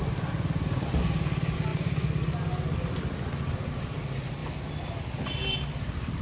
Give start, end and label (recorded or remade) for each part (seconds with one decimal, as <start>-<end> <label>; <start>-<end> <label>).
0.0-6.2 recorded